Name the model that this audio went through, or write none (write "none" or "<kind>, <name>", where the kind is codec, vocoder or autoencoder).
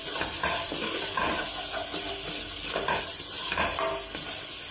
none